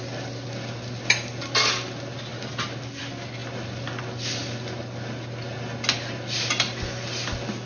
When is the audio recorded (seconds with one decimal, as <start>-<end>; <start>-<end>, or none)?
0.0-7.7